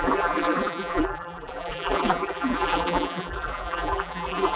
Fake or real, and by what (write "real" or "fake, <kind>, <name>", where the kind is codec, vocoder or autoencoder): fake, vocoder, BigVGAN v2